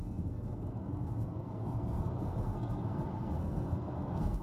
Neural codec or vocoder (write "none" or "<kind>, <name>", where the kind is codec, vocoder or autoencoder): codec, SNAC